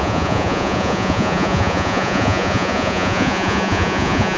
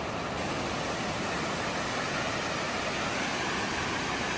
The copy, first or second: first